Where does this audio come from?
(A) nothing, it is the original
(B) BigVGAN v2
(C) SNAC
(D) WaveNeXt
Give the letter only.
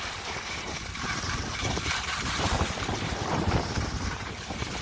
B